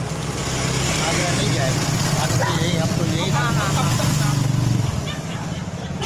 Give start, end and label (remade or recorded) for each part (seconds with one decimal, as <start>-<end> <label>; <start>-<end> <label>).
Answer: 0.0-6.1 recorded